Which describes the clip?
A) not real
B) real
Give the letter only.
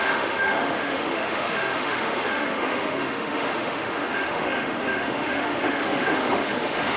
A